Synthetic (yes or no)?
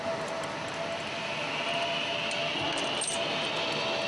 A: no